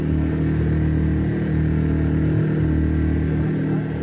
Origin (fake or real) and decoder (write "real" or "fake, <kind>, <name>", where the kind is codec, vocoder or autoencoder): real